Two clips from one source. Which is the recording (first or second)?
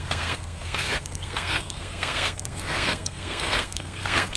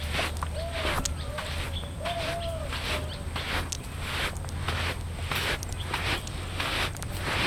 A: second